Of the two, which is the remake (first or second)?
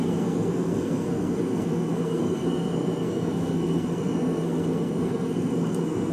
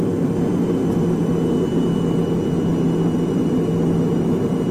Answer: first